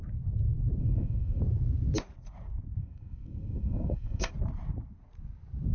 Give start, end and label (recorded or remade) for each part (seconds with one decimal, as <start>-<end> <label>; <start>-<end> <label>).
0.0-0.8 recorded; 0.8-1.4 remade; 1.4-2.8 recorded; 2.8-4.3 remade; 4.3-5.7 recorded